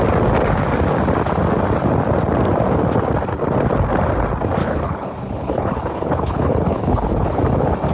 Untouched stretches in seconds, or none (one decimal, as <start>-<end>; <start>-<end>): 0.0-4.6; 7.4-7.9